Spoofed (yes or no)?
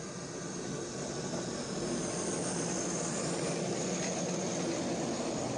no